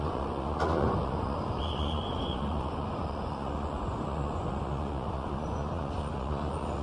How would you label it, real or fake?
fake